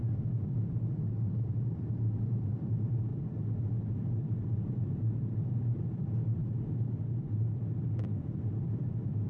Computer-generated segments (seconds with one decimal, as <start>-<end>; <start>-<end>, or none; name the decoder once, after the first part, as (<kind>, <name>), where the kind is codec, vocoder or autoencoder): 0.0-3.1 (vocoder, BigVGAN v2); 4.7-6.4